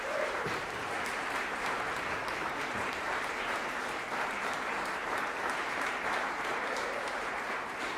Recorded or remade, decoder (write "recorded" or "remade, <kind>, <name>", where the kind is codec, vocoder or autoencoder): remade, vocoder, BigVGAN v2